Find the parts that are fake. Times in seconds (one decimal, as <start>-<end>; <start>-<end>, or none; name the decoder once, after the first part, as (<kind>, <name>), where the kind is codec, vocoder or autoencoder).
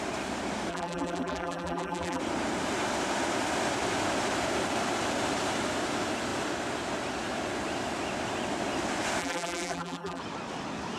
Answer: 0.7-2.2 (vocoder, BigVGAN v2); 9.2-10.2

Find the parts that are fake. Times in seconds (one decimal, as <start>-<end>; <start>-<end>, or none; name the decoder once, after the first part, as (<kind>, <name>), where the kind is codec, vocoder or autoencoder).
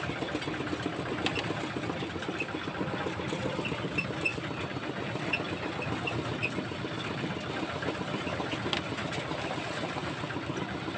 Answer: 4.3-5.3 (vocoder, BigVGAN v2); 6.4-7.9; 10.0-10.6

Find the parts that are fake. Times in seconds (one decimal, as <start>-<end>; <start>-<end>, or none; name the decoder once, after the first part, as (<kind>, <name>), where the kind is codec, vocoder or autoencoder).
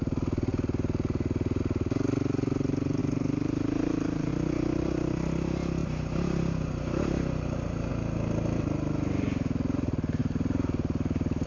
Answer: 3.0-4.3 (vocoder, BigVGAN v2); 5.8-7.9; 10.2-11.5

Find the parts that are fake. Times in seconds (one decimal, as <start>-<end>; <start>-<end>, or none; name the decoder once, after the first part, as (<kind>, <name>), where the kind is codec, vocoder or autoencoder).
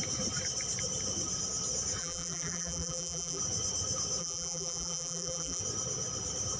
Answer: 2.0-3.4 (vocoder, BigVGAN v2); 4.2-5.6